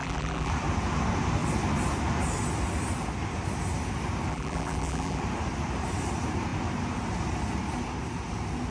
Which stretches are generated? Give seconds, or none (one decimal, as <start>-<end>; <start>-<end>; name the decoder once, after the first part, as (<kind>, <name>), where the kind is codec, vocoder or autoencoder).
0.0-0.5 (vocoder, BigVGAN v2); 4.3-5.2